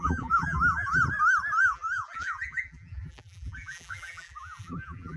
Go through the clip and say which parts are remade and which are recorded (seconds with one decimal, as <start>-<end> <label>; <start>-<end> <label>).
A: 0.0-1.0 remade; 1.0-1.6 recorded; 1.6-5.2 remade